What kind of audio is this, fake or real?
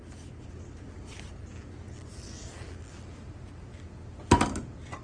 real